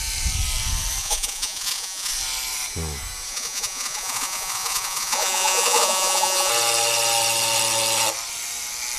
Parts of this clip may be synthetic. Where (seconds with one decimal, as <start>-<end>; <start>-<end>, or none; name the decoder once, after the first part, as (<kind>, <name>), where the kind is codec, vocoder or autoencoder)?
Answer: 1.0-2.1 (vocoder, Vocos); 3.3-6.5